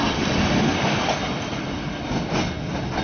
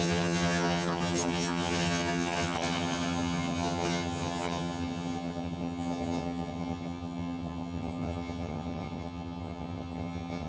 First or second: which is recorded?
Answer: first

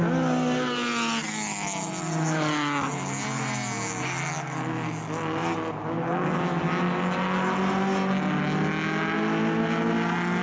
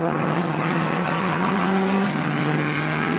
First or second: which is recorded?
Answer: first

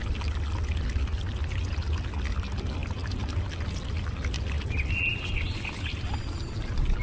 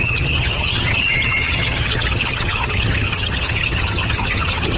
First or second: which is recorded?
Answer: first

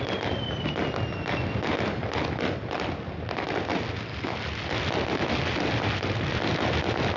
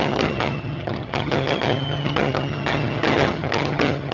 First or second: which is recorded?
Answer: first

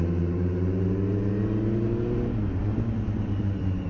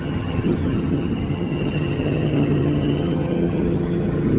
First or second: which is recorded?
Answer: first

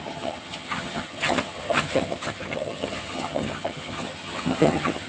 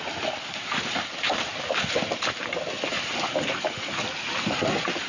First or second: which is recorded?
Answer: second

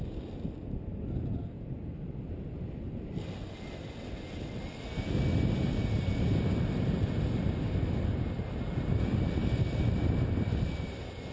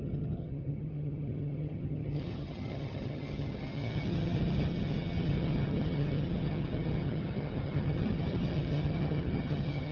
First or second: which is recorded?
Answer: first